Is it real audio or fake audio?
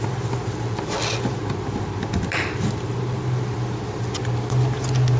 real